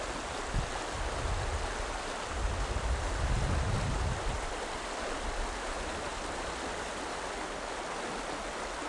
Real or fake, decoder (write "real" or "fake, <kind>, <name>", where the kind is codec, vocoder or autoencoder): real